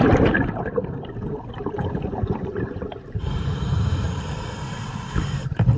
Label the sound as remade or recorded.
remade